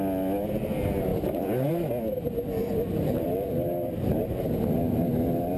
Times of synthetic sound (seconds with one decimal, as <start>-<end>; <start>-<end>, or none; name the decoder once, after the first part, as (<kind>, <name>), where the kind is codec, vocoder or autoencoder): 1.1-1.7 (vocoder, BigVGAN v2); 2.6-5.6